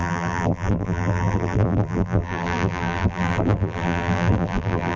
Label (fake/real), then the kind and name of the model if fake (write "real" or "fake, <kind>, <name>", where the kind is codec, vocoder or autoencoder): fake, vocoder, BigVGAN v2